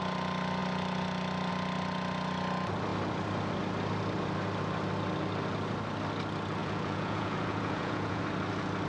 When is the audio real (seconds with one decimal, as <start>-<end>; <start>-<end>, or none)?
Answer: 0.0-6.6; 8.2-8.9